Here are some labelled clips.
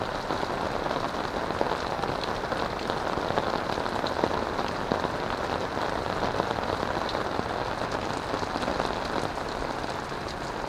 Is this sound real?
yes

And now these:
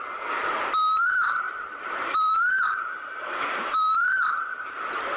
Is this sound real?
no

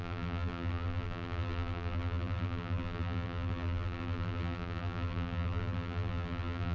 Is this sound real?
no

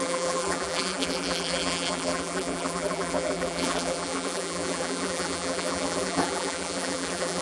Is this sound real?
no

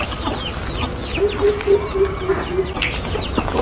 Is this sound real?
yes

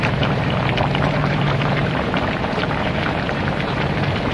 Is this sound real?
no